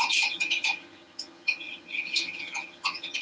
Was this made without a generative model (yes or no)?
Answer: no